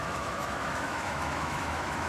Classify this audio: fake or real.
fake